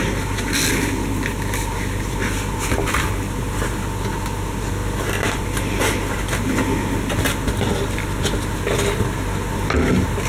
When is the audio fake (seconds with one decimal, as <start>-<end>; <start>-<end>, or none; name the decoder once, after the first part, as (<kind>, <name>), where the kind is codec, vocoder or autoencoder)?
none